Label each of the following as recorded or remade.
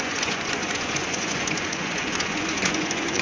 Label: remade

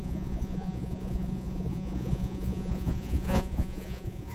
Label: remade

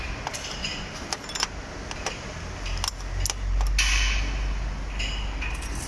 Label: recorded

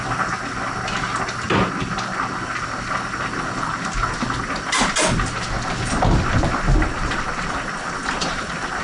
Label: recorded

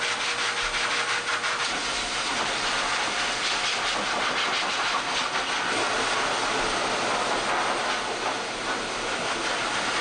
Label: recorded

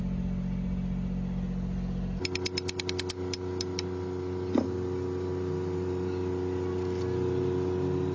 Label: recorded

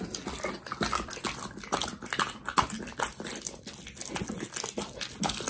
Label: recorded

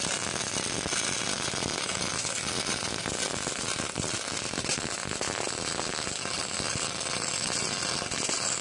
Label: recorded